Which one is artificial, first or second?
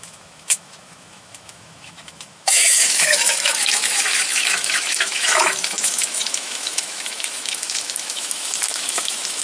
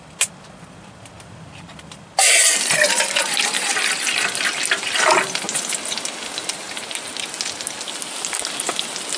first